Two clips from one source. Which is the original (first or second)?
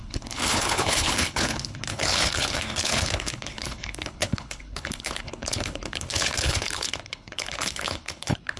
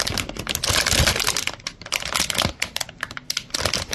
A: second